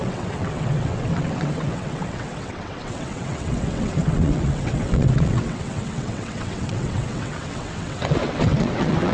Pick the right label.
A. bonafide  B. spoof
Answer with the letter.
B